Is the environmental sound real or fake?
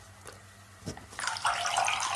real